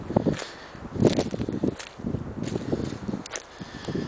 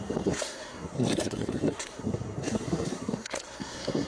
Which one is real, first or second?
first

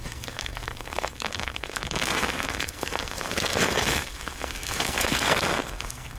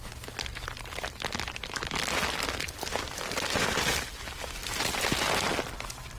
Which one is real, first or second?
second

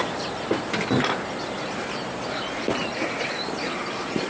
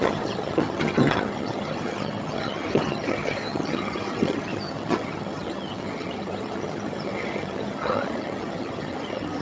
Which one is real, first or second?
first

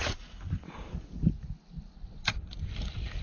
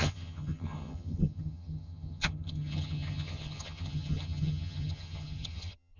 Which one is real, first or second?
first